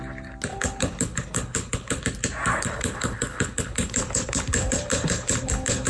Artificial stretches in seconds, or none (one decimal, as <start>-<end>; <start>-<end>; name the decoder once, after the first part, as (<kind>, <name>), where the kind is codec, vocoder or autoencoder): 0.5-2.0 (codec, HILCodec); 2.5-5.9